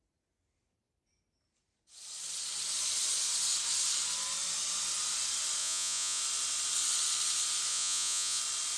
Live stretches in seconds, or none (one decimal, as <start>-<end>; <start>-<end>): 0.0-5.6; 6.2-7.7; 8.4-8.8